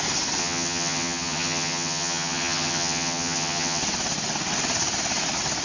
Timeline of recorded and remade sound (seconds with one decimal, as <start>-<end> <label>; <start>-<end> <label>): 0.0-0.4 recorded; 0.4-3.8 remade; 3.8-5.6 recorded